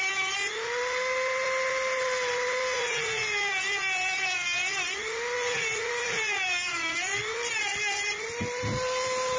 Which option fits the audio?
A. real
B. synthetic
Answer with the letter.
A